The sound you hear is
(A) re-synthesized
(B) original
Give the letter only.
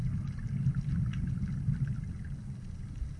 B